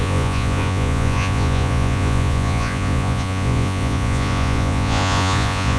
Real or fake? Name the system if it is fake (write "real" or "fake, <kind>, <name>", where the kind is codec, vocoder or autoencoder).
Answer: fake, vocoder, Vocos